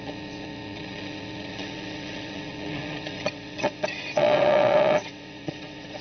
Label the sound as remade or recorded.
remade